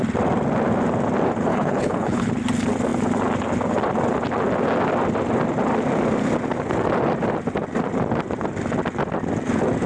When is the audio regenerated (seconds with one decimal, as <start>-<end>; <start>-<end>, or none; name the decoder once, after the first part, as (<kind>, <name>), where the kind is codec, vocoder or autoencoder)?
1.5-2.3 (codec, HILCodec)